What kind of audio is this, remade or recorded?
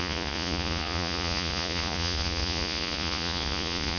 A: remade